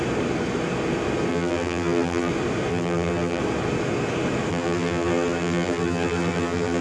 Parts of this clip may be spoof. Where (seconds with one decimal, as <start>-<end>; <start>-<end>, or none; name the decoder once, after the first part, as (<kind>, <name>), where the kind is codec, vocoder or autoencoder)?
1.3-2.3 (vocoder, BigVGAN v2); 2.7-3.4; 4.5-6.8